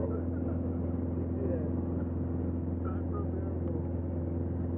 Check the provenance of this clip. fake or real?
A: real